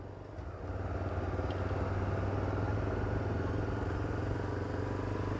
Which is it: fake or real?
real